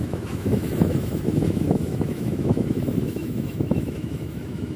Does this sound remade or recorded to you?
remade